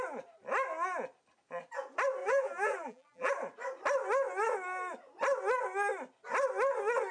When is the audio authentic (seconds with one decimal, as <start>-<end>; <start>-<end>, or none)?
0.0-2.2; 3.3-7.1